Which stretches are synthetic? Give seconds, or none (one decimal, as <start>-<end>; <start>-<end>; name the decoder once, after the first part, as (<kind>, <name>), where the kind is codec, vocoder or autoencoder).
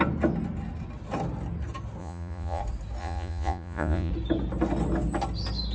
2.0-2.6 (vocoder, Vocos); 3.0-4.1